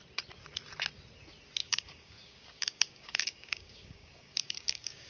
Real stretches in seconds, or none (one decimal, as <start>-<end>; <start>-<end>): 0.0-1.6